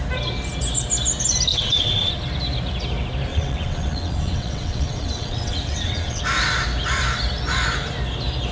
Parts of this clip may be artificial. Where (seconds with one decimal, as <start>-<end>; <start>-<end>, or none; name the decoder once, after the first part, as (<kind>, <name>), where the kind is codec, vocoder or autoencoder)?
1.5-2.1 (vocoder, WaveNeXt); 3.3-6.2